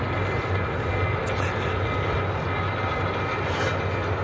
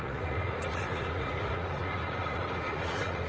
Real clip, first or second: first